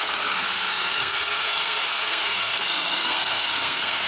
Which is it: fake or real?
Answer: fake